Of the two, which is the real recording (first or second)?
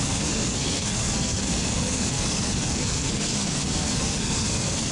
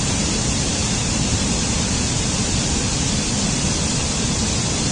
second